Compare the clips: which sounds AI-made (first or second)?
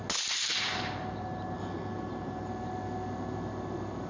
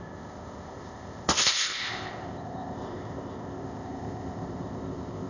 second